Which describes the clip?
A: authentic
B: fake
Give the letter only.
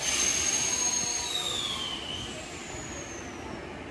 A